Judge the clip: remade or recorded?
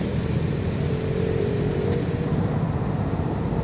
recorded